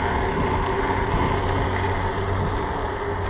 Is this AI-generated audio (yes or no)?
no